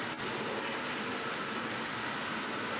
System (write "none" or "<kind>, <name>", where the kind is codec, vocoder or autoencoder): none